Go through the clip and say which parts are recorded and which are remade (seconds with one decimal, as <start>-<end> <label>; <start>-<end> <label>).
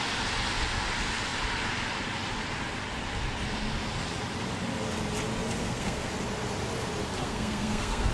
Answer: 0.0-5.6 recorded; 5.6-6.1 remade; 6.1-7.2 recorded; 7.2-8.1 remade